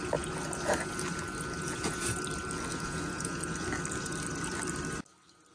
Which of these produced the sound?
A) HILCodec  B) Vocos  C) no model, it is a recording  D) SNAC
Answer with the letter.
C